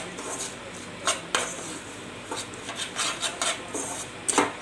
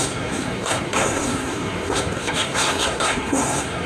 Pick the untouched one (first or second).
first